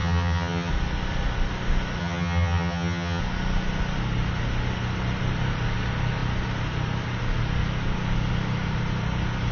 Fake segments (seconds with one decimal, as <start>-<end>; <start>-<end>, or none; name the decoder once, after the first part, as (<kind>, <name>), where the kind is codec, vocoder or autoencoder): 0.0-0.7 (vocoder, HiFi-GAN); 2.0-3.2